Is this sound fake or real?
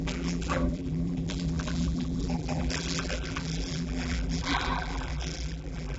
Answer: fake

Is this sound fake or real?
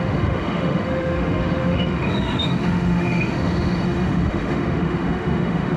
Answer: fake